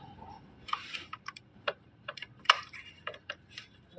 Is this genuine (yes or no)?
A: no